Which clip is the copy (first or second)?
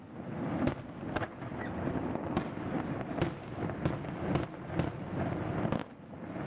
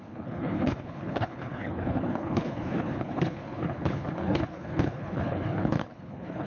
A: second